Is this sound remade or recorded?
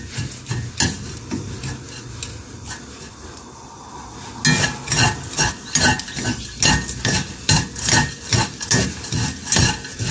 recorded